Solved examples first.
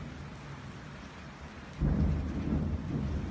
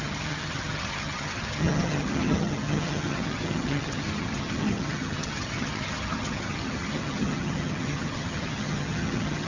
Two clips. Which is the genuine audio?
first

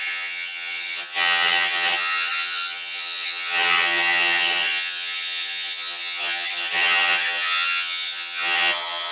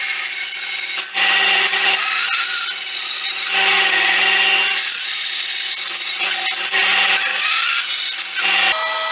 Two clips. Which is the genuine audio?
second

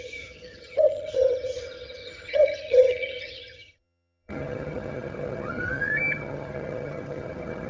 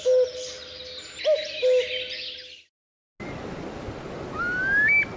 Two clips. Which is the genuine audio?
second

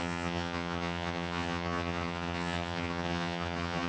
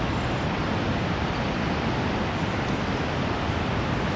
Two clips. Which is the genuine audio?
second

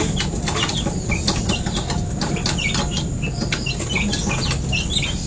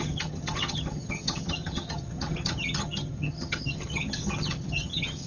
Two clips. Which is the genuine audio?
first